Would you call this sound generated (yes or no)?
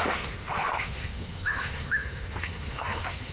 yes